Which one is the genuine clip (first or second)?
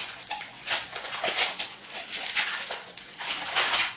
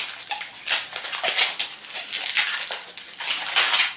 second